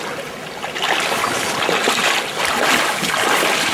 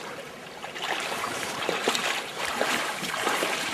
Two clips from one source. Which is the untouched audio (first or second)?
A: first